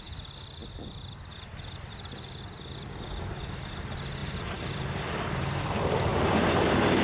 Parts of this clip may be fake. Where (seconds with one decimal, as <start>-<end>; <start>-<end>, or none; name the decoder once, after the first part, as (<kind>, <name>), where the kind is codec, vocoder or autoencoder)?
0.6-2.4 (vocoder, BigVGAN v2); 4.2-5.6; 6.1-7.0